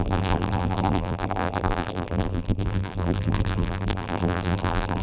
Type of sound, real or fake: fake